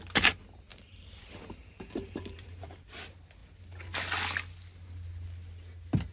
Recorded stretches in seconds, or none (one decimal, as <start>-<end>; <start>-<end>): 0.0-0.7; 3.0-6.1